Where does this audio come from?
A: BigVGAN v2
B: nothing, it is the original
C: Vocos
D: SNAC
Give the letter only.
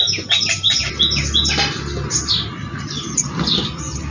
B